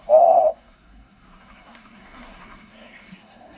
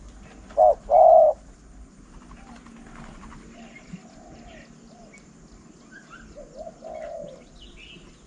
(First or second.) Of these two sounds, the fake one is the first